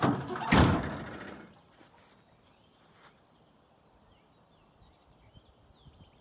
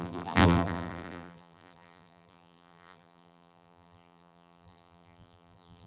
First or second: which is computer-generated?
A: second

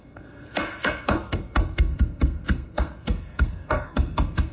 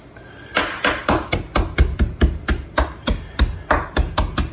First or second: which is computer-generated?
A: first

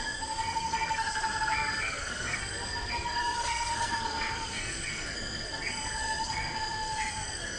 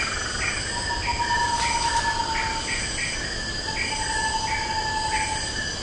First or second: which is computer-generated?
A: first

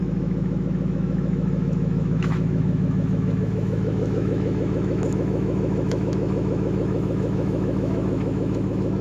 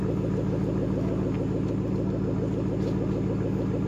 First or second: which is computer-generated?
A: first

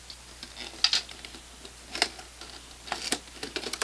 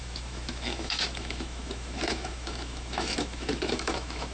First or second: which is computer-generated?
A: second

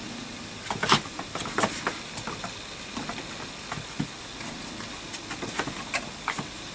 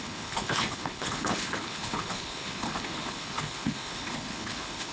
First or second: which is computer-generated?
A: second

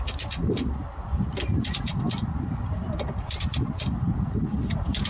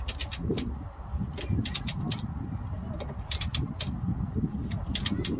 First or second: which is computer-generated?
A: first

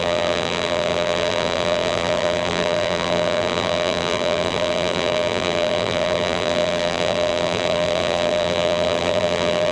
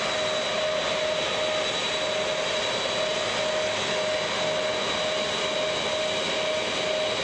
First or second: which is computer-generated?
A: first